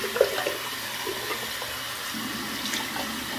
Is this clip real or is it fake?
real